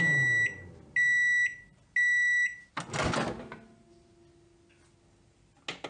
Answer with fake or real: real